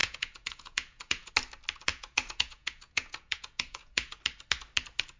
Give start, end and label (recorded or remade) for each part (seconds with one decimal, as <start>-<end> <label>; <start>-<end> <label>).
0.0-1.3 remade; 1.3-1.9 recorded; 1.9-4.2 remade; 4.2-5.2 recorded